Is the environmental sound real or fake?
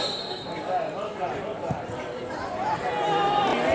real